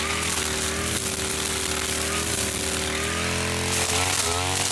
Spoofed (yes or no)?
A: no